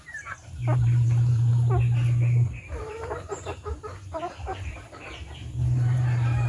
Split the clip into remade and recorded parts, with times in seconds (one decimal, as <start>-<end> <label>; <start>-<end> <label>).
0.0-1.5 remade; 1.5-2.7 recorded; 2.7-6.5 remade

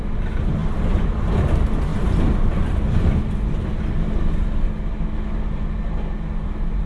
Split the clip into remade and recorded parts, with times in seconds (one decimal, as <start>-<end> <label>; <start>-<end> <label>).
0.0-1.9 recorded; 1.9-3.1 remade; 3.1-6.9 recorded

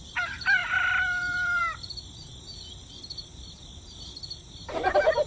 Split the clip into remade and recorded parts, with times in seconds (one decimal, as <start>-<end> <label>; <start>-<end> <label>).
0.0-0.6 recorded; 0.6-1.6 remade; 1.6-2.3 recorded; 2.3-4.6 remade; 4.6-5.3 recorded

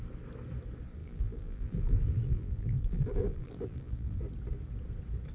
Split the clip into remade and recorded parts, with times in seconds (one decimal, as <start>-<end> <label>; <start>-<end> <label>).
0.0-1.0 recorded; 1.0-4.2 remade; 4.2-5.3 recorded

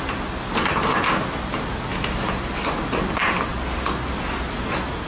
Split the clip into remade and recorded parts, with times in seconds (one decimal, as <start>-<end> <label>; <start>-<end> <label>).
0.0-1.9 recorded; 1.9-2.6 remade; 2.6-5.1 recorded

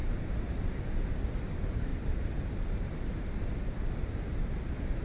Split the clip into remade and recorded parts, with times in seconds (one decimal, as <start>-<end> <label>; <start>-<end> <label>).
0.0-0.8 remade; 0.8-1.9 recorded; 1.9-5.0 remade